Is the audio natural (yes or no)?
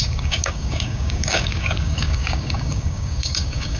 no